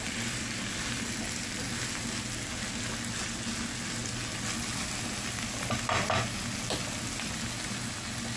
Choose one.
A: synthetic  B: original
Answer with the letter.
B